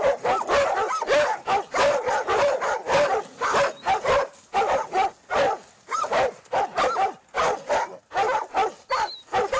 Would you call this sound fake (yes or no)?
no